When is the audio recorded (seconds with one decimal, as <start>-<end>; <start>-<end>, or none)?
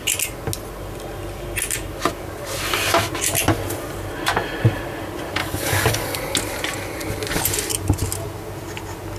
0.0-5.4; 6.2-9.2